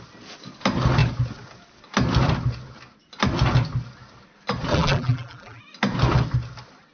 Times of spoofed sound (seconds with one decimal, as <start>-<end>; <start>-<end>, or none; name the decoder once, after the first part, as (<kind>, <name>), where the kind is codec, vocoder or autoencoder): 4.7-5.6 (vocoder, BigVGAN v2)